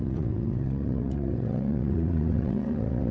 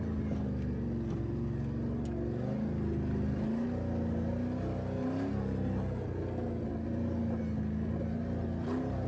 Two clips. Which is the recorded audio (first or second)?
second